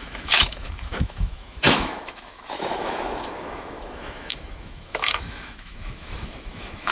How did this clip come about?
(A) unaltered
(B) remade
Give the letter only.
B